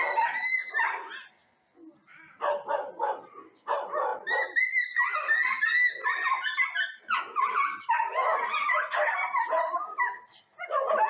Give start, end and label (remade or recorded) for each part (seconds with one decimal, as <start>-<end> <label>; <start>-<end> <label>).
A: 0.0-11.1 recorded